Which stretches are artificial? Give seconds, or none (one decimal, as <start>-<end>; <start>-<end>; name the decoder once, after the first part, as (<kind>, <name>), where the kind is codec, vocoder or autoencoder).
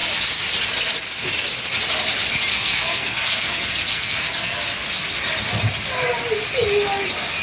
2.5-4.6 (codec, SNAC)